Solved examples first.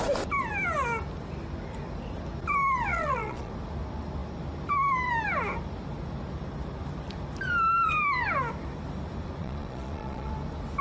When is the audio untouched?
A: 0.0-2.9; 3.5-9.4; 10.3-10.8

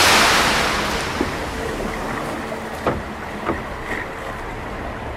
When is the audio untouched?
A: 0.0-5.2